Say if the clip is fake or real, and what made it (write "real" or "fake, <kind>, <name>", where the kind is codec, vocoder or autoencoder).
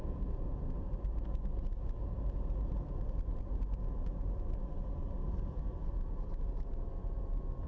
real